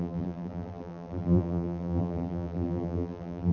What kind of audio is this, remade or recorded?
remade